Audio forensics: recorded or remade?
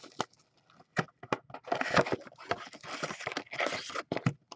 recorded